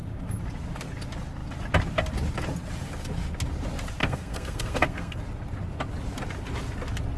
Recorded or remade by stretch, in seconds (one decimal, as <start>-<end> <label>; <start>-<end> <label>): 0.0-4.0 recorded; 4.0-5.2 remade; 5.2-7.2 recorded